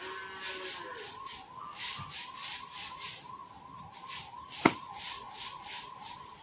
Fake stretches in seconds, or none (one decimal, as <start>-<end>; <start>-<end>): 3.4-5.4

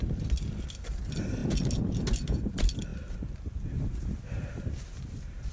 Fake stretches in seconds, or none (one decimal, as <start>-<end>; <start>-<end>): none

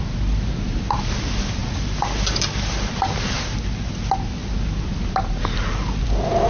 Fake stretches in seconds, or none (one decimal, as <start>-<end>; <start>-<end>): none

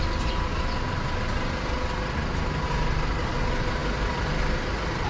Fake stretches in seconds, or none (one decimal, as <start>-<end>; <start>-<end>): 3.8-5.1